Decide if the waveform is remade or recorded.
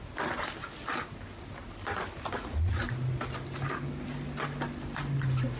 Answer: recorded